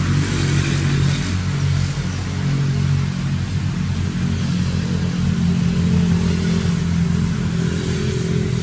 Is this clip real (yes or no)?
yes